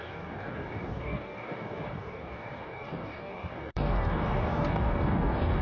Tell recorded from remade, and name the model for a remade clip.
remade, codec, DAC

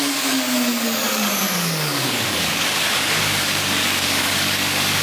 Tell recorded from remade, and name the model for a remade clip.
remade, codec, DAC